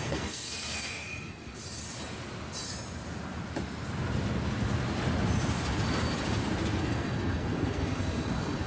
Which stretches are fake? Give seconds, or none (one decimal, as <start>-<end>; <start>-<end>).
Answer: 0.0-1.6; 6.8-8.7